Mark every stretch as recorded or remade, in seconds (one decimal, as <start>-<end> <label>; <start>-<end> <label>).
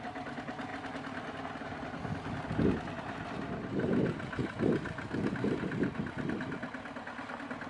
0.0-7.7 recorded